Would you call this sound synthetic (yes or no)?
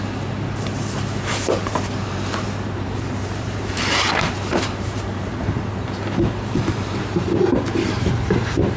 yes